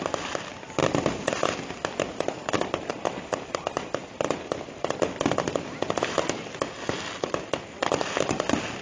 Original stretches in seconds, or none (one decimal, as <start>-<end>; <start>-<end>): 0.0-8.8